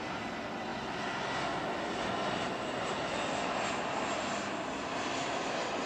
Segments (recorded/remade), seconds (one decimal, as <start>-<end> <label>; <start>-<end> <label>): 0.0-5.9 recorded

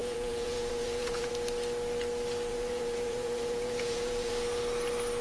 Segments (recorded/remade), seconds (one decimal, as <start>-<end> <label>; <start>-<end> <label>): 0.0-1.3 remade; 1.3-2.5 recorded; 2.5-4.3 remade; 4.3-5.2 recorded